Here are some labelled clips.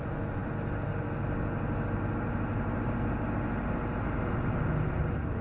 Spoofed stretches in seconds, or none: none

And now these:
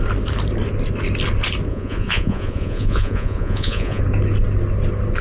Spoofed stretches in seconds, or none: 1.7-4.0

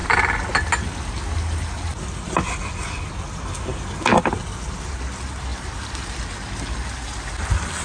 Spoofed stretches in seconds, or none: none